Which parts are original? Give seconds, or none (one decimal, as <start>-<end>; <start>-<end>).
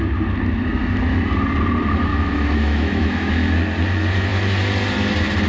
0.0-2.1; 3.3-5.5